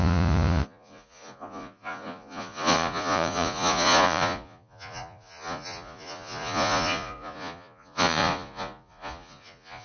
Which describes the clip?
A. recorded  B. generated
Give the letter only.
B